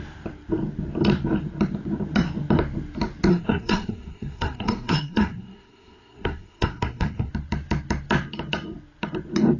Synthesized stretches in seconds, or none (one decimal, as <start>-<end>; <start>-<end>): 3.3-7.3